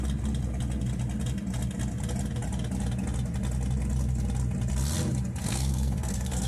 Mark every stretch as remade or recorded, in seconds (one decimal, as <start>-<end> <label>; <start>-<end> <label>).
0.0-5.4 recorded; 5.4-6.5 remade